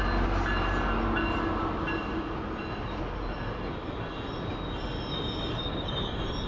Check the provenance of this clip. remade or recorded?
recorded